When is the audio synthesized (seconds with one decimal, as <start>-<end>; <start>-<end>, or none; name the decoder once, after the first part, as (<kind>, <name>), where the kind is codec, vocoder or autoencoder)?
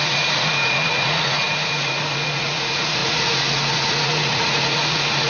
0.0-5.3 (vocoder, Vocos)